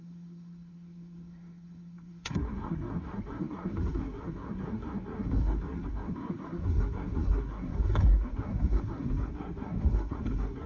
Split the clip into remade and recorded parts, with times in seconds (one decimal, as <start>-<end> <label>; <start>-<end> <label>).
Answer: 0.0-10.7 remade